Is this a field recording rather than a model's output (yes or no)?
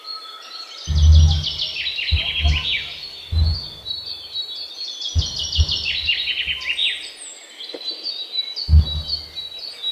yes